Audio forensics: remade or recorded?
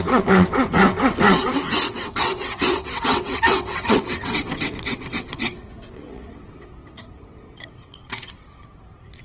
remade